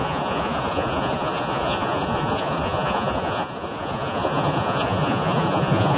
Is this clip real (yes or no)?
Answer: no